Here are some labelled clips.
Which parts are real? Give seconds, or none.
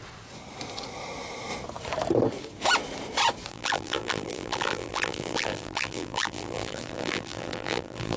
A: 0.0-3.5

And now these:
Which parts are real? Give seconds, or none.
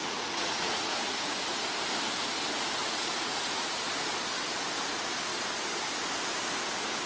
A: 1.4-2.8; 3.9-7.1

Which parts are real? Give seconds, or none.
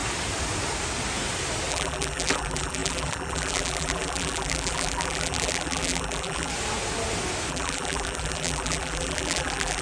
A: 0.0-1.7; 6.5-7.5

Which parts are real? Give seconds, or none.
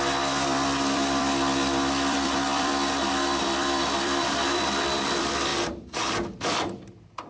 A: 5.5-6.1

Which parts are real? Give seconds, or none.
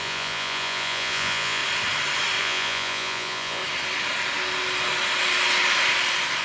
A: 1.6-2.4; 3.6-6.4